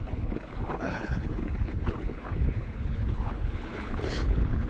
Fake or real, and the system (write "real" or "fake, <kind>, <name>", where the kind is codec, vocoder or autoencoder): fake, codec, HILCodec